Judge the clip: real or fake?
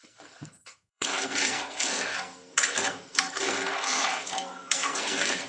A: fake